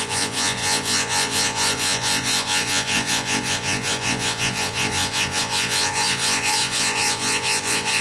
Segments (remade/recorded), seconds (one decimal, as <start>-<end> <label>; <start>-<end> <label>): 0.0-8.0 remade